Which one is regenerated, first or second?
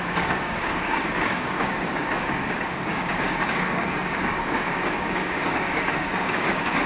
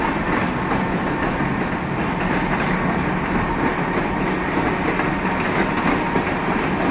first